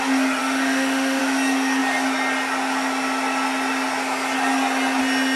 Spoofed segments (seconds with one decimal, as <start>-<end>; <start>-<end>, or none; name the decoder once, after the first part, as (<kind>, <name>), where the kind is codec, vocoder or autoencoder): 0.4-1.2 (autoencoder, DAC-VAE)